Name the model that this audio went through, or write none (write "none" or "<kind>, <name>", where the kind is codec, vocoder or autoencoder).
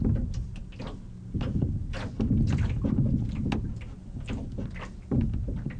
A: none